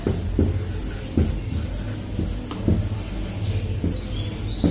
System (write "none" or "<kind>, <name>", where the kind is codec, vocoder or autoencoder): none